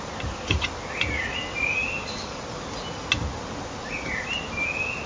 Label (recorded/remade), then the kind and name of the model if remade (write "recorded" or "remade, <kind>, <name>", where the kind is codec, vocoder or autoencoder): recorded